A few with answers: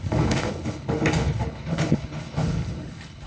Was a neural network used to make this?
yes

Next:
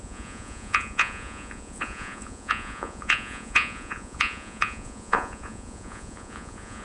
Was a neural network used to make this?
yes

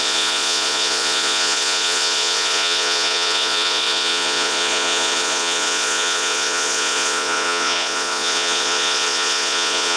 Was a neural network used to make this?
yes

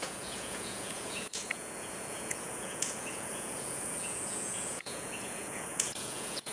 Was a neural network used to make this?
yes